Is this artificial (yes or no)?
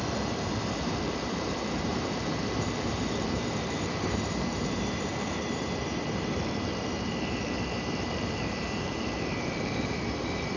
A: yes